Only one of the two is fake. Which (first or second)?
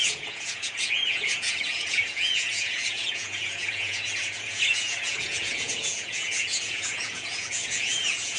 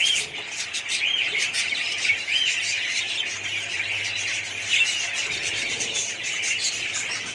first